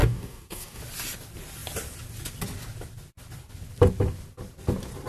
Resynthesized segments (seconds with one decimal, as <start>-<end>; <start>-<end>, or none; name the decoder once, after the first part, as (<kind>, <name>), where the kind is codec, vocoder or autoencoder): 0.0-0.8 (codec, DAC)